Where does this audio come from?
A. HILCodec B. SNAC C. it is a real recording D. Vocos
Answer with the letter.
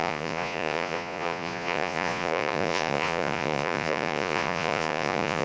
D